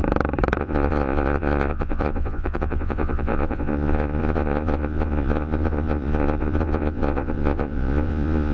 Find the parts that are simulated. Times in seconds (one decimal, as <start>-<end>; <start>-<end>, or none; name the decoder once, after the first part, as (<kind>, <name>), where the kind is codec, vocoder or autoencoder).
0.6-8.5 (vocoder, Vocos)